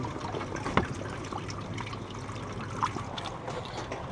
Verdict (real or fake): real